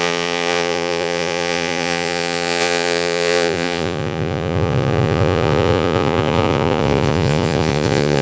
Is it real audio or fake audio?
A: fake